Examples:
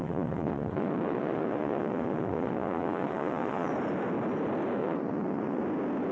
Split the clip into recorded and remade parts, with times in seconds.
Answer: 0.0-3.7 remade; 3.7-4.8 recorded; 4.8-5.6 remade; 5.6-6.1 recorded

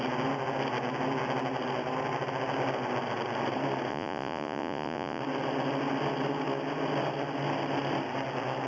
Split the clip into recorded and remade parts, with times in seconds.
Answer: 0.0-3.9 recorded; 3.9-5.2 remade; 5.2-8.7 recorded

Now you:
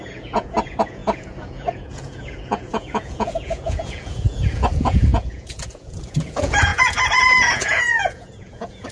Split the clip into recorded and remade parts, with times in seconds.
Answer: 0.0-8.9 remade

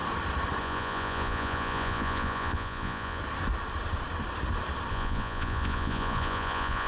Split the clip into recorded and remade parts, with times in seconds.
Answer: 0.0-0.6 recorded; 0.6-3.2 remade; 3.2-4.9 recorded; 4.9-6.9 remade

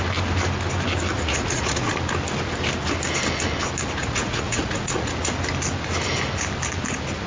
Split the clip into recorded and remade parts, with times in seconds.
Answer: 0.0-1.1 recorded; 1.1-1.9 remade; 1.9-4.0 recorded; 4.0-5.1 remade; 5.1-7.3 recorded